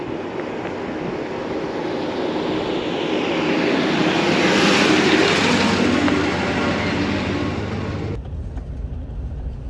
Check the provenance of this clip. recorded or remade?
recorded